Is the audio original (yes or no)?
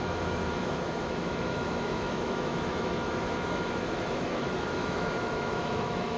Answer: no